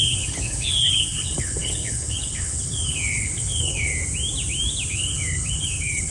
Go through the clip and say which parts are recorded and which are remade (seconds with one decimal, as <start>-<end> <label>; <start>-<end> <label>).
0.0-3.9 remade; 3.9-4.9 recorded; 4.9-6.1 remade